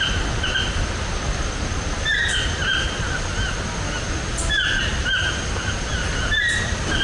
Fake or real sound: real